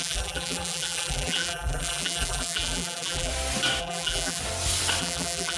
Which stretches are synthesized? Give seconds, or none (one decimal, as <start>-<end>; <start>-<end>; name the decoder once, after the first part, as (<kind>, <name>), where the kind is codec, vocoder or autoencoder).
0.0-3.3 (vocoder, BigVGAN v2); 3.8-4.4; 5.0-5.6